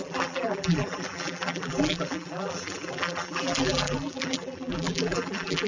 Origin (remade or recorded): remade